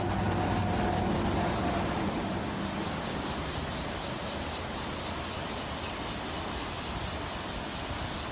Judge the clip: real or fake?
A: real